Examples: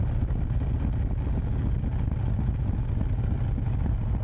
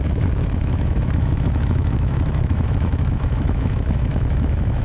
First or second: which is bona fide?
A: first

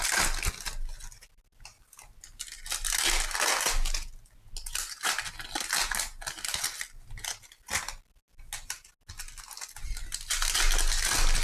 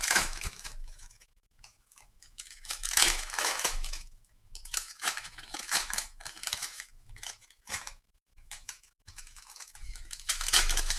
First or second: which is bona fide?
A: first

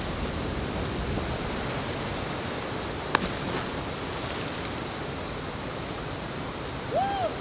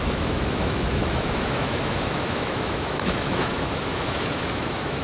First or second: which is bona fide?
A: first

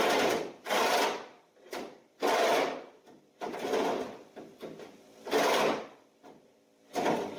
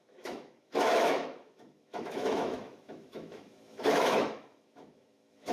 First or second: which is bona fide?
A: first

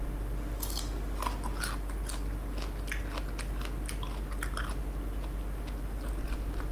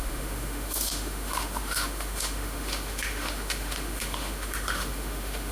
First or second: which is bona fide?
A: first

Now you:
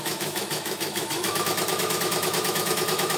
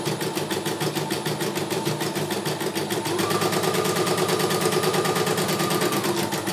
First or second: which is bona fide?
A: second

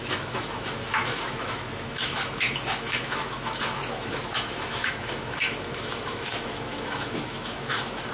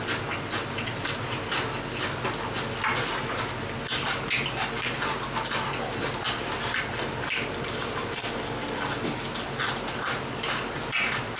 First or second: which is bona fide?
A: second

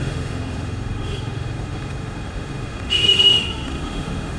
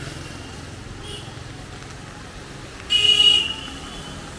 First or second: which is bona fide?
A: second